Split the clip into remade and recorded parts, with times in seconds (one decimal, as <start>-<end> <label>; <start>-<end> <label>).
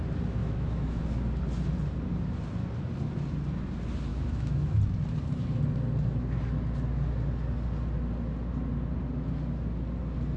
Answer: 0.0-0.4 recorded; 0.4-1.0 remade; 1.0-4.1 recorded; 4.1-4.8 remade; 4.8-10.4 recorded